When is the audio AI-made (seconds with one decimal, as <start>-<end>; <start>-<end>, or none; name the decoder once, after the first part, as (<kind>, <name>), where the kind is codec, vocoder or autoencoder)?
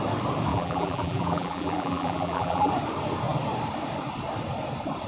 0.5-2.7 (vocoder, BigVGAN v2)